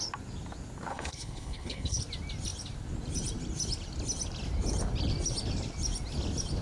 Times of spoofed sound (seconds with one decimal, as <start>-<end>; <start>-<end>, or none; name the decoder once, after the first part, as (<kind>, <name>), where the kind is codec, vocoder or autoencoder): 0.9-2.0 (codec, HILCodec)